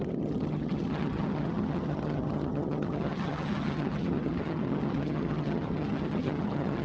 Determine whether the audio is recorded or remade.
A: remade